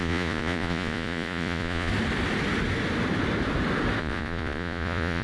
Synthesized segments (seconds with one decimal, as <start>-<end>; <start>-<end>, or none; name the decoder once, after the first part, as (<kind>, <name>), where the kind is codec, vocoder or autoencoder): 0.0-1.9 (vocoder, Vocos); 4.0-5.2